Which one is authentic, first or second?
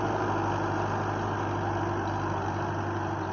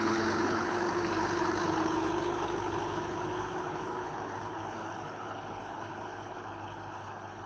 first